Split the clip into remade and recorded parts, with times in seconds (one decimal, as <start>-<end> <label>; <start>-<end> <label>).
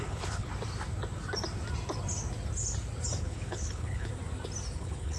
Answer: 0.0-0.5 remade; 0.5-3.2 recorded; 3.2-4.1 remade; 4.1-4.8 recorded; 4.8-5.2 remade